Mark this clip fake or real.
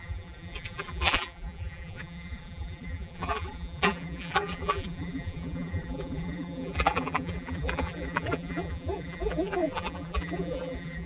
fake